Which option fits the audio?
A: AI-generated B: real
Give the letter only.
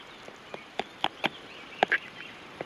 B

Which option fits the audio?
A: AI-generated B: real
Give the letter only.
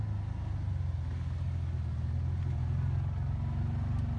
B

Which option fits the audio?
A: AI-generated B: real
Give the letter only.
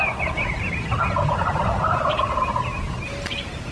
B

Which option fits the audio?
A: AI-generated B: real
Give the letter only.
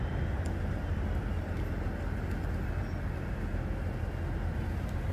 B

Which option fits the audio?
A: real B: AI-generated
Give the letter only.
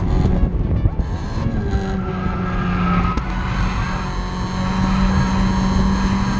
A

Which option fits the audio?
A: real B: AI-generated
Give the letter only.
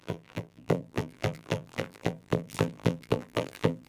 B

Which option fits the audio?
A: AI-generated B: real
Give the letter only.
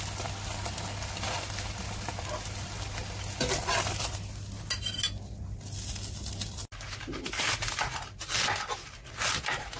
B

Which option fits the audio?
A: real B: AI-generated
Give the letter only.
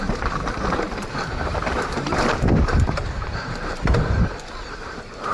B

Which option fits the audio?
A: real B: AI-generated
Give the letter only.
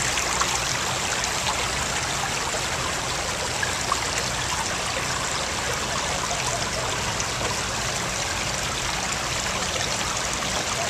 A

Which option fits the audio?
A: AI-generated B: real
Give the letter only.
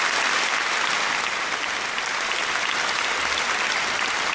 B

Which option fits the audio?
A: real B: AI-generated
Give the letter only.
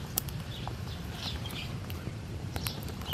B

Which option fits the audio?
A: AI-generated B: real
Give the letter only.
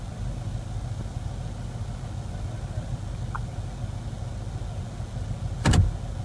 B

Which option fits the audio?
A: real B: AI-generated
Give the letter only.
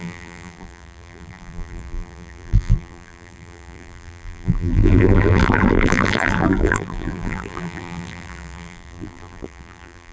B